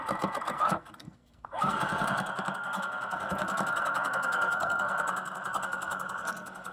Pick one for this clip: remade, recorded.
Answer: remade